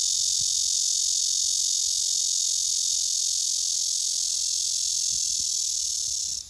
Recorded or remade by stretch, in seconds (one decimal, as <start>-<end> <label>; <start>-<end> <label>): 0.0-6.5 recorded